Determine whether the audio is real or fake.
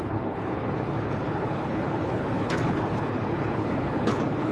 fake